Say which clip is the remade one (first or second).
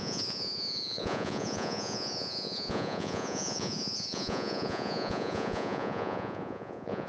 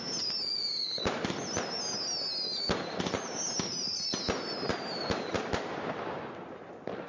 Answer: first